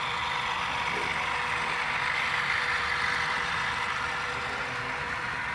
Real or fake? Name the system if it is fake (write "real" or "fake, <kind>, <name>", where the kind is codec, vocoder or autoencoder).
real